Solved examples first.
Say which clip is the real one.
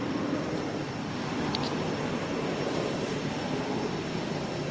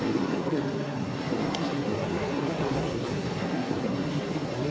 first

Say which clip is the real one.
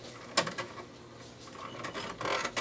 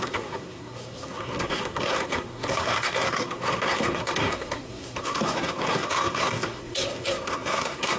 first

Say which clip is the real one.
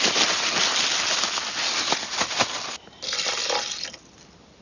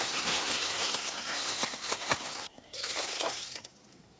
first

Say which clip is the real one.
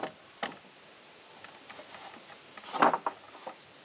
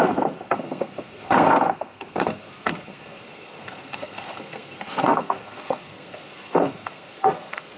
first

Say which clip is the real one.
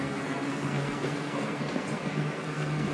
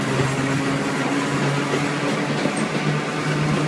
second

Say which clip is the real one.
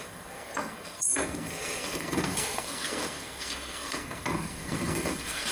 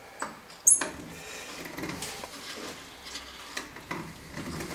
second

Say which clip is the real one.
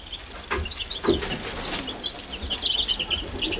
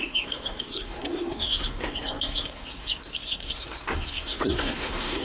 first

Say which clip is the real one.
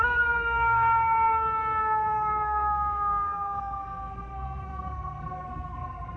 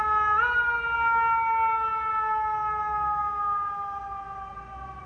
second